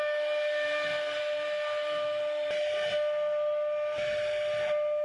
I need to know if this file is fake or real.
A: real